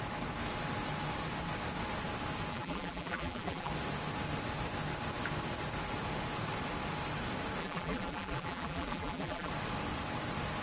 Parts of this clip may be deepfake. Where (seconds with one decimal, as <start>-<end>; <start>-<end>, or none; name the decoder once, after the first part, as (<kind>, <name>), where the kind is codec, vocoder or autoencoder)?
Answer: 2.5-3.7 (vocoder, BigVGAN v2); 7.6-9.5